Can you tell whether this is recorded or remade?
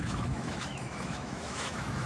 remade